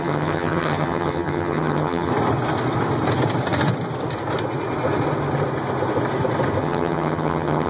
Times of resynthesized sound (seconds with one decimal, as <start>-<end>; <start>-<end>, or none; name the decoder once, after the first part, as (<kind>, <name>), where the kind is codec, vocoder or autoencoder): 0.0-2.1 (vocoder, HiFi-GAN); 6.6-7.7